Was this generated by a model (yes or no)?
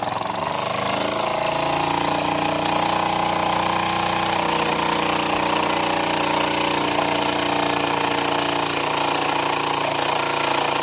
no